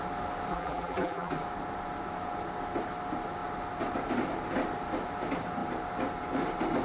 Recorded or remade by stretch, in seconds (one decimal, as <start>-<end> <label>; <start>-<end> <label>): 0.0-0.5 recorded; 0.5-1.3 remade; 1.3-6.8 recorded